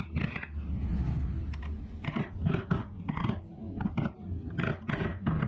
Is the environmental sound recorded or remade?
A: recorded